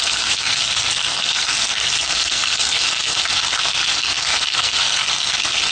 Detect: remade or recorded remade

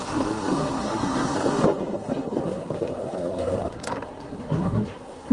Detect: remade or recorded remade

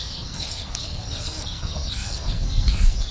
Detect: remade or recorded remade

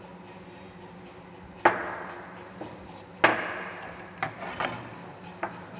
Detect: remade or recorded recorded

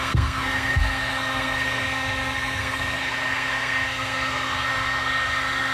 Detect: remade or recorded remade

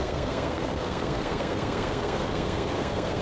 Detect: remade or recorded remade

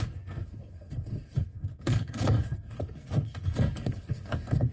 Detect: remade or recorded remade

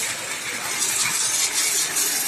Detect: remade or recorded recorded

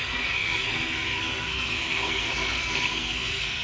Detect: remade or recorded remade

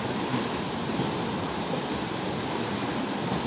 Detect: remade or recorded recorded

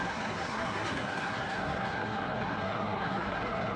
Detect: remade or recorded remade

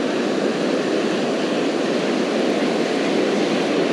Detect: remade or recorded recorded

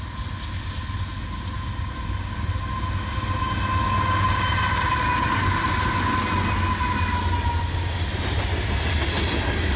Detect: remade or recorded recorded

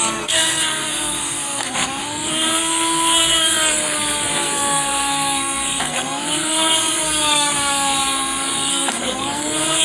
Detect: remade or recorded remade